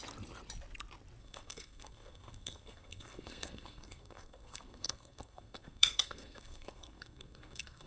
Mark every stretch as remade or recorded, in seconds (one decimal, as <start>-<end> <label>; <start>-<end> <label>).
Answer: 0.0-1.2 recorded; 1.2-7.9 remade